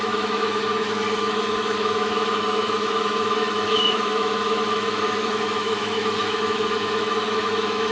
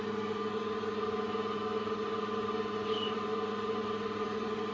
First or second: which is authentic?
second